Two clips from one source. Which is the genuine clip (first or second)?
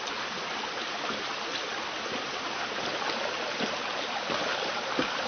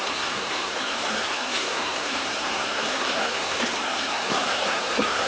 first